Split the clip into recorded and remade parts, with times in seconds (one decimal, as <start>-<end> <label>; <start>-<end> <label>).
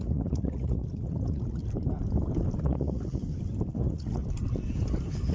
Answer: 0.0-1.6 remade; 1.6-2.6 recorded; 2.6-3.2 remade; 3.2-3.7 recorded; 3.7-4.2 remade; 4.2-5.3 recorded